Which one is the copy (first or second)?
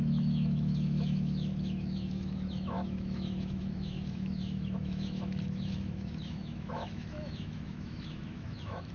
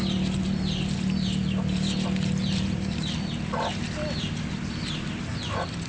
first